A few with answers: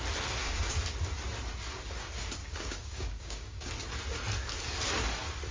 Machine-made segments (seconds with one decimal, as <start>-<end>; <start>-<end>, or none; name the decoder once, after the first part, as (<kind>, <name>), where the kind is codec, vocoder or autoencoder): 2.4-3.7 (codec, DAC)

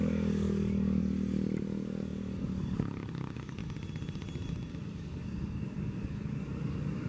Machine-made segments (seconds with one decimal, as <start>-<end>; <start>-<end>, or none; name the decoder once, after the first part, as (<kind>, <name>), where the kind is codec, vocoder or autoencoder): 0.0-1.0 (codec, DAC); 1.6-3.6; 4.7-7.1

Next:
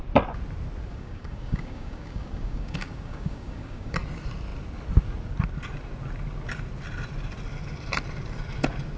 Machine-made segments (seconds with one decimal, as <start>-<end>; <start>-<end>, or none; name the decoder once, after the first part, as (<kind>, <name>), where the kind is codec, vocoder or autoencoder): 0.9-4.0 (codec, DAC)